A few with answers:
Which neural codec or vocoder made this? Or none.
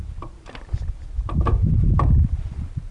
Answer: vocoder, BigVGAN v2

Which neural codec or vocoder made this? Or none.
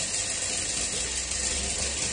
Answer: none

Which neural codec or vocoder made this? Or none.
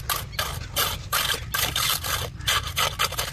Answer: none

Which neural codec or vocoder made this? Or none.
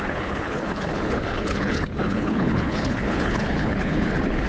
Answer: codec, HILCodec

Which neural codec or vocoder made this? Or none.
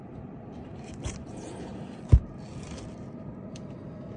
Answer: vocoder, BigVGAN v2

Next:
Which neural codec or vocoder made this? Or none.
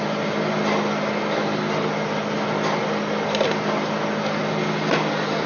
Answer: none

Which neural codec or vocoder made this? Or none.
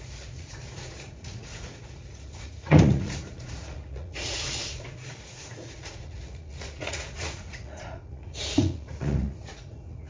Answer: vocoder, Vocos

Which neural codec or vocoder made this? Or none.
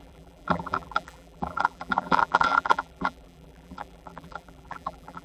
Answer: vocoder, BigVGAN v2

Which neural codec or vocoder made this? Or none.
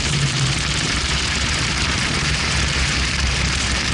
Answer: vocoder, BigVGAN v2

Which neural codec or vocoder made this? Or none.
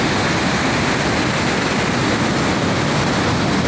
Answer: none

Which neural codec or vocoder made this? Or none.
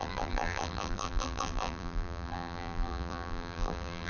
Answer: vocoder, BigVGAN v2